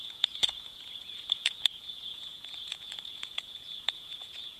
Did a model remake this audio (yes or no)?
yes